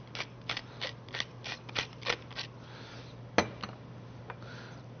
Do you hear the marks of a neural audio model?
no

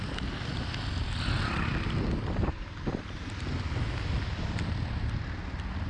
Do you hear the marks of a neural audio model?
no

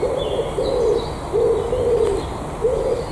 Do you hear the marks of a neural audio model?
no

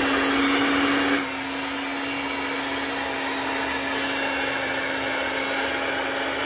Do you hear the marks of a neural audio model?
no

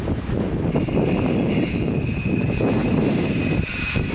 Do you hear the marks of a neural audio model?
yes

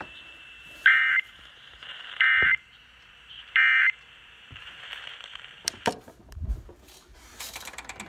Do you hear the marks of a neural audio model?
yes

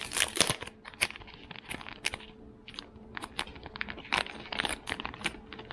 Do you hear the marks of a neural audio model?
no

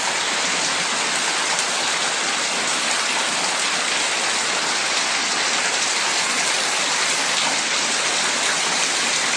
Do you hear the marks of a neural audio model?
no